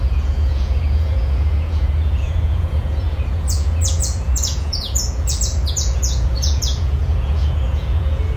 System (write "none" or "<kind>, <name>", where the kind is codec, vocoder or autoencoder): vocoder, Vocos